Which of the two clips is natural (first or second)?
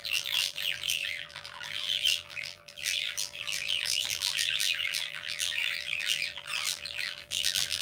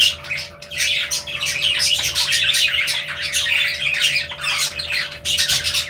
second